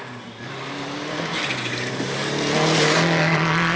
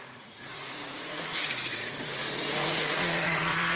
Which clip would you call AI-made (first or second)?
second